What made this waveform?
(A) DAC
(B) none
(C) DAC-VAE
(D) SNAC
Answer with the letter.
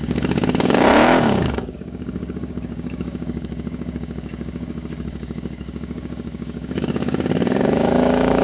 A